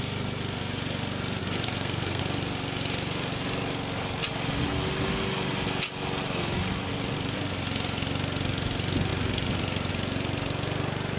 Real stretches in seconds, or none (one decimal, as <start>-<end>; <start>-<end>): 0.0-1.4; 2.2-11.2

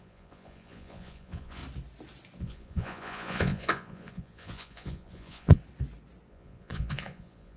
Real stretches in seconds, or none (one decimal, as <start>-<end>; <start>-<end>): 1.6-2.4; 5.6-6.3

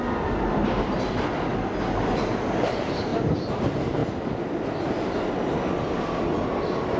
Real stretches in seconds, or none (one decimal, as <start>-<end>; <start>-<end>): 0.0-7.0

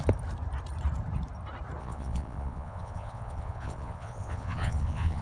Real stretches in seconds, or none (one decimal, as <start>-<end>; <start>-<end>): 0.0-1.8